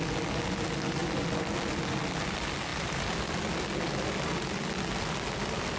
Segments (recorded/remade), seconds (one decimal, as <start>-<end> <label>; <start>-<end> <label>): 0.0-5.8 recorded